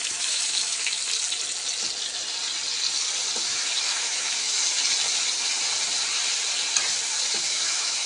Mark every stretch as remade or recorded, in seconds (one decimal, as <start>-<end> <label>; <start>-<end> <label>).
0.0-1.0 remade; 1.0-3.4 recorded; 3.4-4.6 remade; 4.6-7.4 recorded; 7.4-8.1 remade